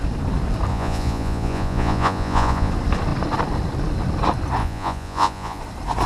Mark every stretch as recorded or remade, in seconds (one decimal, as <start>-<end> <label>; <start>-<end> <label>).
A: 0.0-0.7 recorded; 0.7-2.7 remade; 2.7-4.6 recorded; 4.6-5.6 remade; 5.6-6.1 recorded